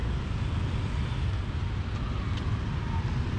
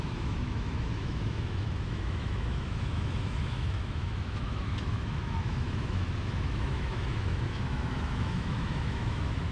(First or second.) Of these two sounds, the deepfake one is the second